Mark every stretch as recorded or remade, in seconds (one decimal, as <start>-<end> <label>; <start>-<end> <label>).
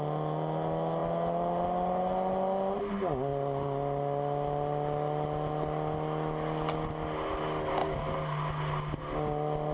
0.0-9.7 recorded